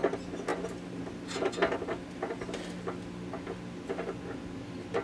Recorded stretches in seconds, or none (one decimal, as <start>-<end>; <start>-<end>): 0.0-5.0